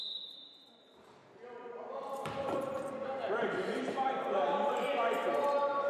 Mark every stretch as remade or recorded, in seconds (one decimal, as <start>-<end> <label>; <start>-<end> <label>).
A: 0.0-1.2 remade; 1.2-4.7 recorded; 4.7-5.9 remade